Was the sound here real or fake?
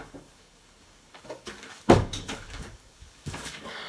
fake